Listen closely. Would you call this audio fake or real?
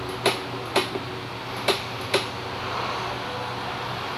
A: real